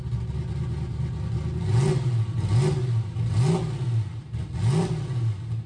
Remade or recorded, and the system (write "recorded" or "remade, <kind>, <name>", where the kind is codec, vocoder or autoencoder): recorded